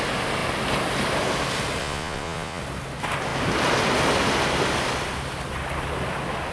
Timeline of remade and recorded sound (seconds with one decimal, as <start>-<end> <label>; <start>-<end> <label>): 0.0-1.8 recorded; 1.8-2.6 remade; 2.6-6.5 recorded